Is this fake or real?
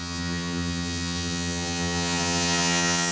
fake